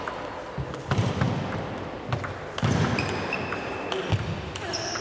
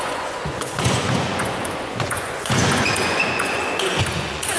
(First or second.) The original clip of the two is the first